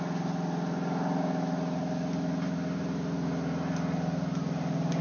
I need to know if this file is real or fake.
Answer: real